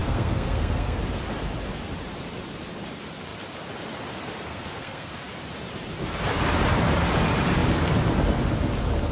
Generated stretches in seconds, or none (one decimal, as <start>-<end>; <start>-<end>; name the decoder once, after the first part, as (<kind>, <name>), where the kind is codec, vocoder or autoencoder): 0.0-1.0 (codec, SNAC); 4.5-5.1